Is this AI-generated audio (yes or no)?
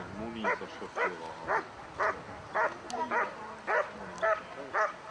no